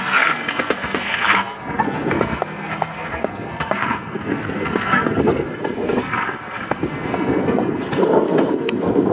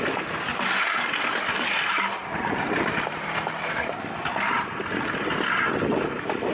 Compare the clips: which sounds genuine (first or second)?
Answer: second